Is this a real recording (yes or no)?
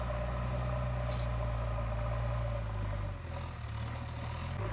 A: yes